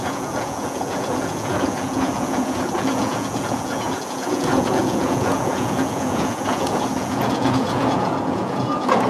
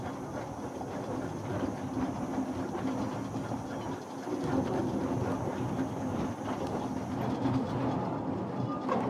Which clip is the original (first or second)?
second